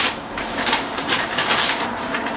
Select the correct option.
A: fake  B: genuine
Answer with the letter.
A